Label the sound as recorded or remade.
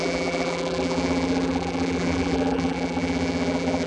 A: remade